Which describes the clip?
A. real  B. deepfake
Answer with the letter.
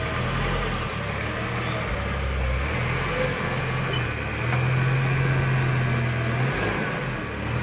A